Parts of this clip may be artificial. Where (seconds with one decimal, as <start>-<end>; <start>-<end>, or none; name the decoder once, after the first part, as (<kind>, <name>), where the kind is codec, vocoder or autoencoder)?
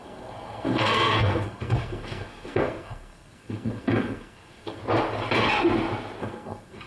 0.0-4.8 (codec, SNAC); 6.2-6.9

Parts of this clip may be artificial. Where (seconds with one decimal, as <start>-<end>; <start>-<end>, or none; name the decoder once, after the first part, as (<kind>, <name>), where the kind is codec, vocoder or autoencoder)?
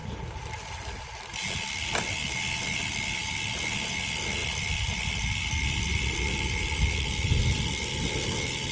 none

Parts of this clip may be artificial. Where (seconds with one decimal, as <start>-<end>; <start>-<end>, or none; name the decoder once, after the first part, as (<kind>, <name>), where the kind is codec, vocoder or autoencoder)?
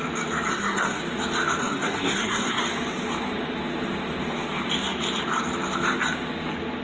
0.5-1.0 (codec, SNAC); 1.6-2.6